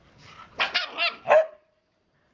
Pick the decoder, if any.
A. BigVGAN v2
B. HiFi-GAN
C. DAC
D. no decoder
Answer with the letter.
D